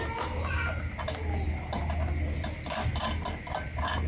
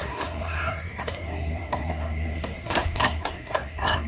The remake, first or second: second